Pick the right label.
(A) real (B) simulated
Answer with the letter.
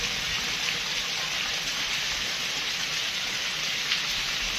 A